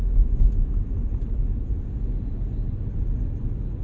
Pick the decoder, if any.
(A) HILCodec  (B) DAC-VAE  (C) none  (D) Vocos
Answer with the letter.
C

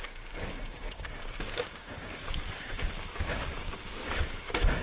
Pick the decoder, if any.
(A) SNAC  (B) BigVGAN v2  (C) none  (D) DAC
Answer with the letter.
D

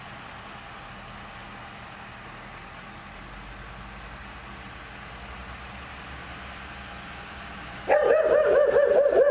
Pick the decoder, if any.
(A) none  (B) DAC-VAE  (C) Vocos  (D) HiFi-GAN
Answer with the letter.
A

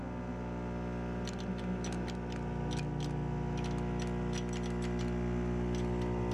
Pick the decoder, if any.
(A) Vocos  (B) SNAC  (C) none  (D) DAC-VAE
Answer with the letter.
C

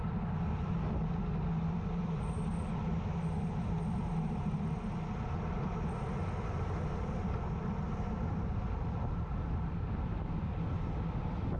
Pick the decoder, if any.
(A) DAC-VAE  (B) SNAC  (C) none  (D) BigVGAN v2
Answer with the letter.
C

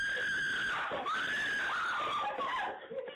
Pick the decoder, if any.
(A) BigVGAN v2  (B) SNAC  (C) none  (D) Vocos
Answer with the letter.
C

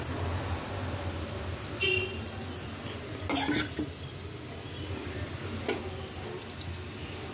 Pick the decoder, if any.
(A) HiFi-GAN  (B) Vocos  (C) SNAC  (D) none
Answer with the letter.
D